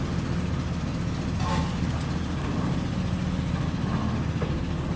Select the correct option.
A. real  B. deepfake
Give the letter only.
A